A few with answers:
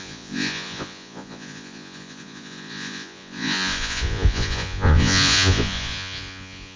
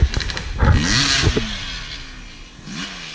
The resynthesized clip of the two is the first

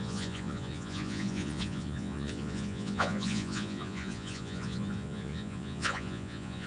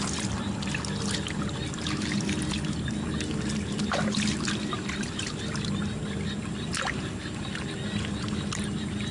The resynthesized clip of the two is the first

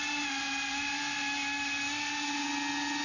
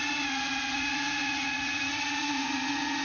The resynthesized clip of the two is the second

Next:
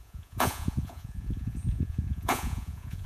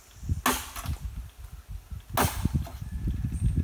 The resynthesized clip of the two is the first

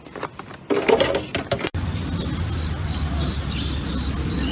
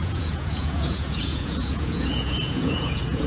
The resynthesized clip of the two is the second